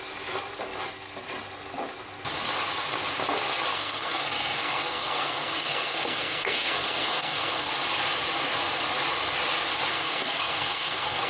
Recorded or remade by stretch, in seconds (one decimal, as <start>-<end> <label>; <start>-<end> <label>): 0.0-3.7 recorded; 3.7-7.7 remade; 7.7-9.9 recorded; 9.9-11.3 remade